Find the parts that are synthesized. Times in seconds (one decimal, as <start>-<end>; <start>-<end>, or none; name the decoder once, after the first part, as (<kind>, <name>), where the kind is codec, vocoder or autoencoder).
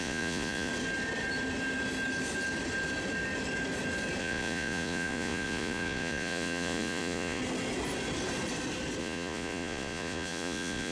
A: 0.0-0.7 (vocoder, Vocos); 4.2-7.4; 9.0-10.9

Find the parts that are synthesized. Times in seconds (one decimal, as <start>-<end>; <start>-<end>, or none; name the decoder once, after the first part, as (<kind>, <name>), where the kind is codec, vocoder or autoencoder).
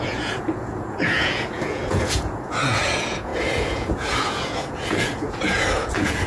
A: 0.0-6.3 (vocoder, Vocos)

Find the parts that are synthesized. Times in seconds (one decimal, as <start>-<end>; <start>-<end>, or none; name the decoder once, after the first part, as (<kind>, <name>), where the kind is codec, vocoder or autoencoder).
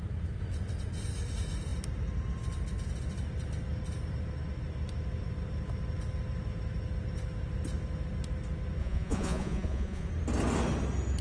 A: 8.8-10.1 (vocoder, Vocos)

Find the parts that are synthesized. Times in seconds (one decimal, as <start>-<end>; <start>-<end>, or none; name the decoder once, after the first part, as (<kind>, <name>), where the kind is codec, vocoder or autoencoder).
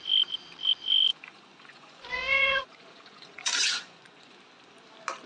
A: 1.1-4.3 (vocoder, Vocos)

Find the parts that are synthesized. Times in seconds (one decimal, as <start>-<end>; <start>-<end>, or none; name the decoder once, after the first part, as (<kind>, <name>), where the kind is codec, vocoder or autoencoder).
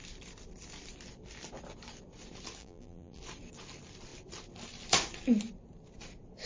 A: 2.6-3.2 (vocoder, BigVGAN v2)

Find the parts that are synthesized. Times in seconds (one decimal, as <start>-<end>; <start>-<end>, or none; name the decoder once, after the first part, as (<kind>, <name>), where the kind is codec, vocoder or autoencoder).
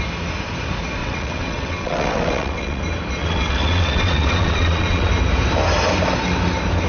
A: 1.0-2.8 (vocoder, WaveNeXt); 3.2-5.1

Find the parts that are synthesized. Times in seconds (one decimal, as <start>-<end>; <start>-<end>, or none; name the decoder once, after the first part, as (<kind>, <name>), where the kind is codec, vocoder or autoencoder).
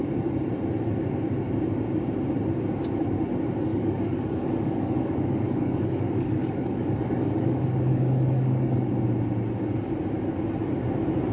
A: 3.7-8.9 (codec, DAC)